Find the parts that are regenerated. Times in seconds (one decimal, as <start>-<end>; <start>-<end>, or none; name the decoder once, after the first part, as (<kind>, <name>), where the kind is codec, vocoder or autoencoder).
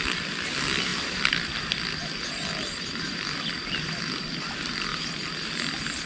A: none